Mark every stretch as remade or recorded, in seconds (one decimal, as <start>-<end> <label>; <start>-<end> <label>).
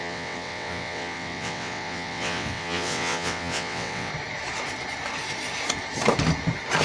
0.0-4.1 remade; 4.1-6.8 recorded